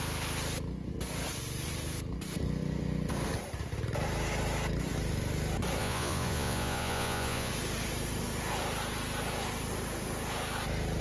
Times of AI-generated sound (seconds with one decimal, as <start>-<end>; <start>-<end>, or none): 5.8-7.5